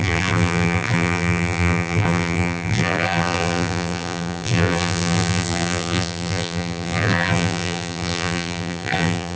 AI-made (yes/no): yes